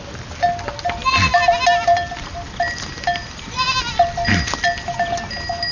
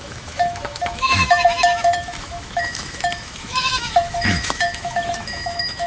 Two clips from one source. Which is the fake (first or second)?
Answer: second